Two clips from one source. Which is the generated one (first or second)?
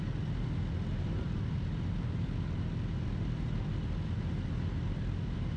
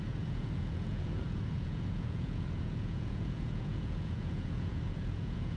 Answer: second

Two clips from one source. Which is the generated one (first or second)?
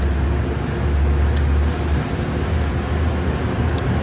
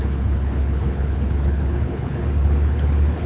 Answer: second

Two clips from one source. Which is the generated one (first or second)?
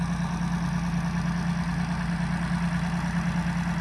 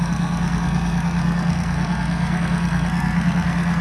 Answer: second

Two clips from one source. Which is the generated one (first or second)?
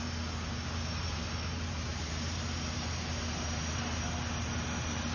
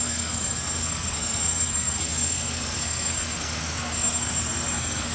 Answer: second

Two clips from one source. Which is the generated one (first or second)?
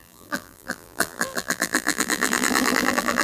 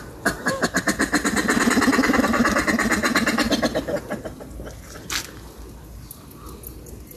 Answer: first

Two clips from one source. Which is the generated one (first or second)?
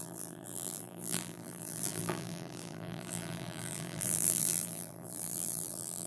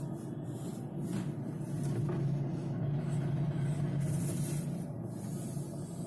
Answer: first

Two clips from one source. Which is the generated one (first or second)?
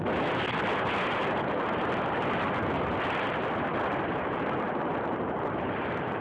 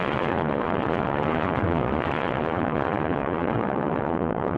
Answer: second